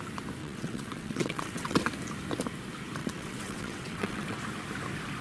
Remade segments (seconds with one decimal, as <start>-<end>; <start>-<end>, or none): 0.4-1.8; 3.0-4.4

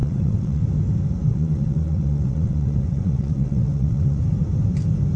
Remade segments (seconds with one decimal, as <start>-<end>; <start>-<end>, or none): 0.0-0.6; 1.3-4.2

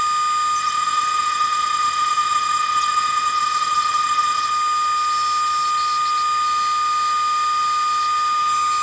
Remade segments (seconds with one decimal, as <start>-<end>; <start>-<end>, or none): 0.6-4.5

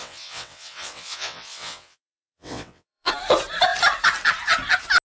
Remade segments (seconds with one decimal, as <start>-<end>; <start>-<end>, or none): 0.0-3.1

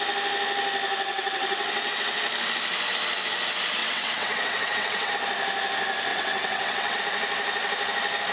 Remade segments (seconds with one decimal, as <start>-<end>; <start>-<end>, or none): 1.1-2.2; 3.8-5.1; 6.1-7.0

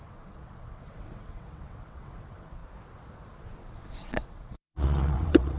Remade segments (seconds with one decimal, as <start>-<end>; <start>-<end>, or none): 0.0-2.6; 3.7-5.6

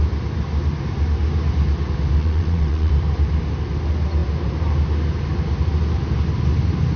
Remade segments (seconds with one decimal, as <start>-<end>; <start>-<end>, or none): 2.2-2.9